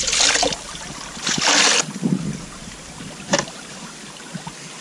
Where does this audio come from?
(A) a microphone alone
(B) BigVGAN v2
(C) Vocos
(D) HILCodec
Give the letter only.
A